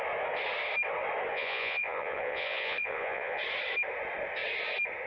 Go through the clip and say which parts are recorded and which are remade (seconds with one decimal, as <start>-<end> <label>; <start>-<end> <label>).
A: 0.0-1.3 recorded; 1.3-3.4 remade; 3.4-5.1 recorded